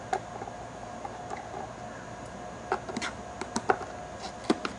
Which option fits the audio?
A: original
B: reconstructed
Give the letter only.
A